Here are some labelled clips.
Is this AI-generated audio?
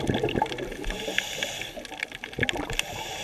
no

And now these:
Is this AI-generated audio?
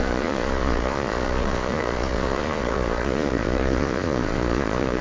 yes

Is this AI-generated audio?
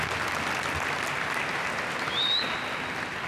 no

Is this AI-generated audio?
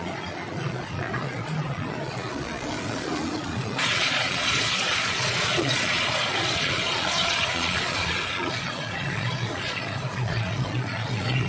yes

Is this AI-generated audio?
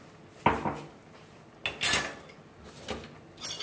no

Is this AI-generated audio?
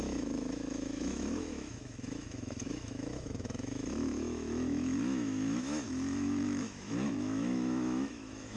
yes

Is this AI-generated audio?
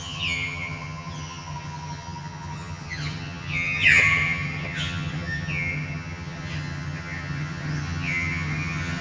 yes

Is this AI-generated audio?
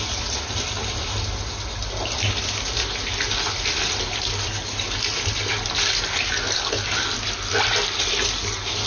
no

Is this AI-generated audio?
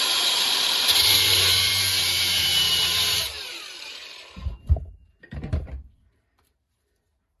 yes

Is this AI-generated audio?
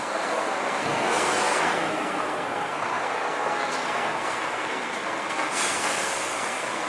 yes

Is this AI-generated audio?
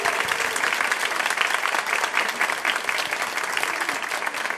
no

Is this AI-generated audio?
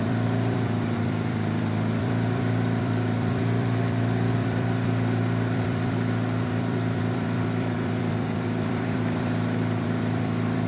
yes